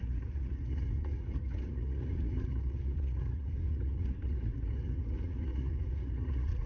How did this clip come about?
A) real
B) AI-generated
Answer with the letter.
B